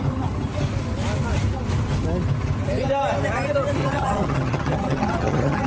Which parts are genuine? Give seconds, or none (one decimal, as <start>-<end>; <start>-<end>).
0.0-3.8